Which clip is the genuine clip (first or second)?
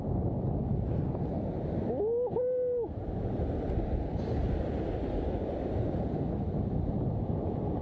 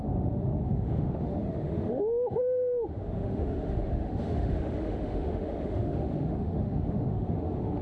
first